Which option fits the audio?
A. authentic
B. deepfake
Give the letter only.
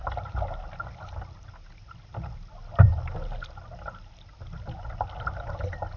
A